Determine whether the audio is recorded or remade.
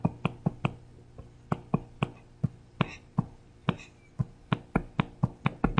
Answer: recorded